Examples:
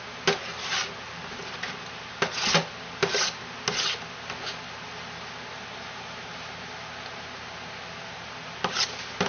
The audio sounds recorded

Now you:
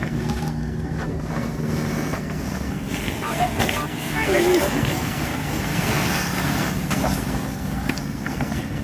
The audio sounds remade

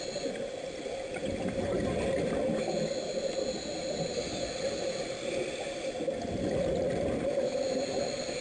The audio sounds recorded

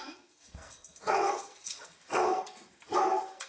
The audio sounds remade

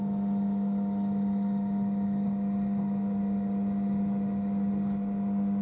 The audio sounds recorded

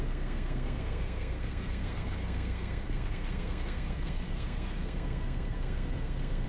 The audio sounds remade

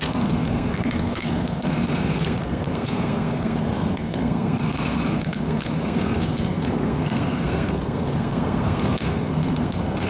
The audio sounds remade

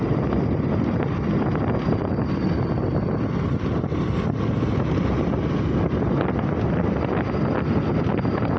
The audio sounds recorded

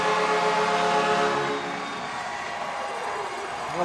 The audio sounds recorded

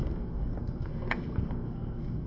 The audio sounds remade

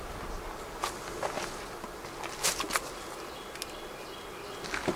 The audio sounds recorded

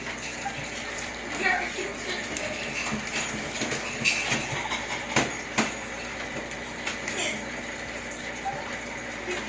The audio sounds recorded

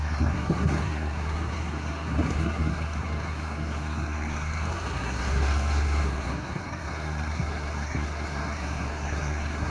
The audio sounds remade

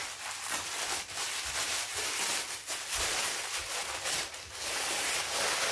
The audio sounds recorded